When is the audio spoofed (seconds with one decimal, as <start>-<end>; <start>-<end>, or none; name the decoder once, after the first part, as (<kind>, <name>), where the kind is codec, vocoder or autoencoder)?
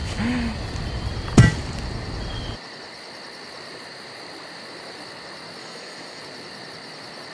5.6-6.2 (autoencoder, DAC-VAE)